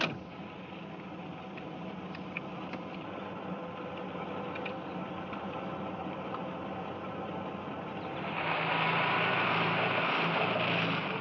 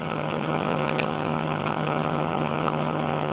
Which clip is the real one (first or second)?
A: first